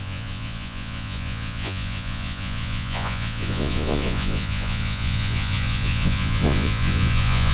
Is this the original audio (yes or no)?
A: no